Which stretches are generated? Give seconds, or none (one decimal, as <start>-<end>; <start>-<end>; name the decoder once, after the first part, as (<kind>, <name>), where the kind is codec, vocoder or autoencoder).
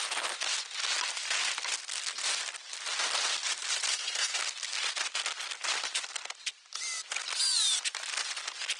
3.9-4.4 (codec, SNAC)